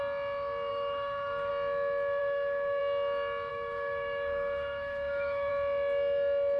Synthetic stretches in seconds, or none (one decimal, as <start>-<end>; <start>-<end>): 0.7-1.5; 2.2-2.8; 3.5-5.5